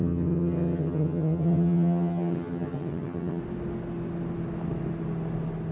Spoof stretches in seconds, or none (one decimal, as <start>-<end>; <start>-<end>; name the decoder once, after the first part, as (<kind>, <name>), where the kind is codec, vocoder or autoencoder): 0.0-3.4 (vocoder, HiFi-GAN)